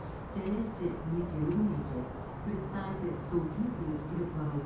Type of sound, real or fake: real